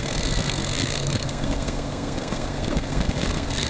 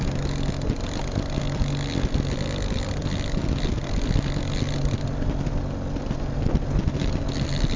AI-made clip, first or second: first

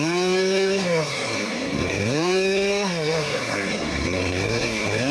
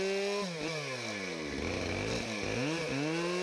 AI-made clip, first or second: first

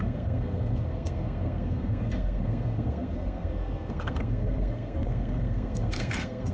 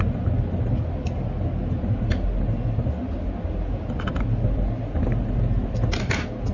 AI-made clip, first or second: first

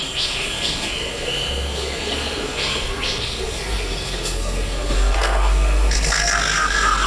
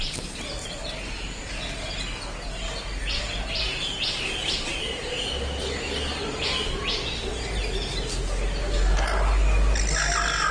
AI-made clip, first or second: first